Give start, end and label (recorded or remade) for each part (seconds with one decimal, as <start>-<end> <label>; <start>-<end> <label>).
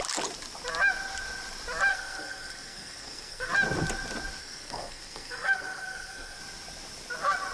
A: 0.0-1.9 recorded; 1.9-3.5 remade; 3.5-4.4 recorded; 4.4-6.4 remade; 6.4-7.5 recorded